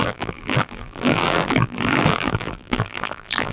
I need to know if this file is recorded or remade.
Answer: remade